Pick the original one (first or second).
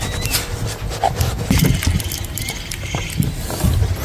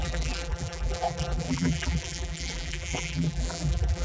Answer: first